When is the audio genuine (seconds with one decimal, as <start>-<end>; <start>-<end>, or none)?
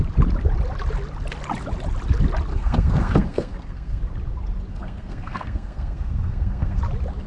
0.0-2.5; 4.0-4.7; 6.8-7.3